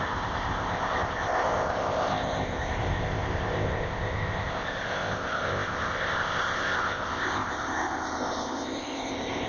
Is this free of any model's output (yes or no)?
no